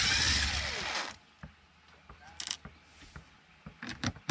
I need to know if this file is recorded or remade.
recorded